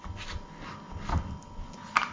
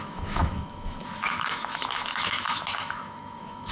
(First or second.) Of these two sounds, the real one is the first